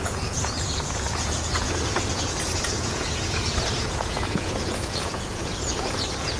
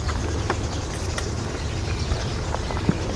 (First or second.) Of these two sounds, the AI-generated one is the first